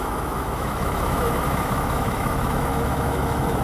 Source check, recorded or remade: remade